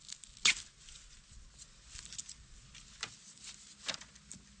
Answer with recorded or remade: recorded